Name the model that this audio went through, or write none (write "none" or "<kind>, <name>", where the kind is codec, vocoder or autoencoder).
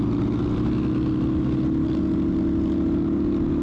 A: none